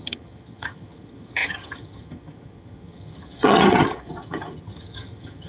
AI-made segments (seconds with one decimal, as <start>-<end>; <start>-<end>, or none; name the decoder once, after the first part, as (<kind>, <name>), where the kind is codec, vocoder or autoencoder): 0.0-5.5 (vocoder, HiFi-GAN)